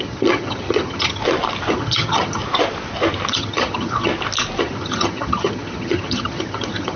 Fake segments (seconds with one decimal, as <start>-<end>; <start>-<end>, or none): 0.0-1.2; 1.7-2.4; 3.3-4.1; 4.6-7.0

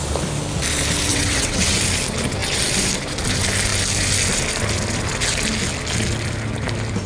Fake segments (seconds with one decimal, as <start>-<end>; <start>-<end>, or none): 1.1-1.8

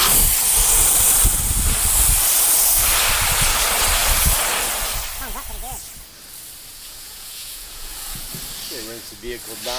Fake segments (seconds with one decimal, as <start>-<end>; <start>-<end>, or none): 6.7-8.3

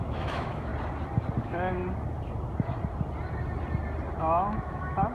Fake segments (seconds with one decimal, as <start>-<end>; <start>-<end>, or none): 0.0-0.7; 1.4-1.8; 4.2-5.1